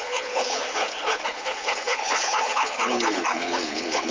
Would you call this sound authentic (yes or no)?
no